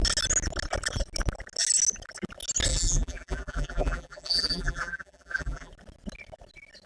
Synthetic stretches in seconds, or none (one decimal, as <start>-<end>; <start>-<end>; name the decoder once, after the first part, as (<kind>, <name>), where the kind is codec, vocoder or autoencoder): 2.7-5.7 (vocoder, BigVGAN v2)